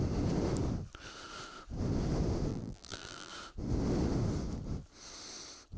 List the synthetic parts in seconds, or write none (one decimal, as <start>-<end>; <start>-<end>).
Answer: 2.5-3.3